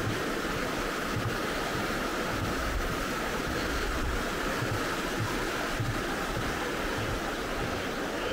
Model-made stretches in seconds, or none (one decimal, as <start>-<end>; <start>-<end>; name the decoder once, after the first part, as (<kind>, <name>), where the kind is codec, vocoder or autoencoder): 2.1-7.1 (vocoder, BigVGAN v2)

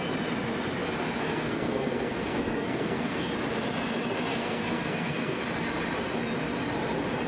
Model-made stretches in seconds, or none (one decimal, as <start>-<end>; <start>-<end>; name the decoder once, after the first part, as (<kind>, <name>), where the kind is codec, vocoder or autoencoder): 1.2-3.3 (codec, SNAC); 4.3-5.4

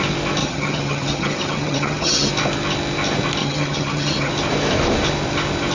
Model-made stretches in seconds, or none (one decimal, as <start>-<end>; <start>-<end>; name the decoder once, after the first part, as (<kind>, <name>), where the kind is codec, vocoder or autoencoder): 0.4-2.3 (vocoder, HiFi-GAN); 3.4-4.3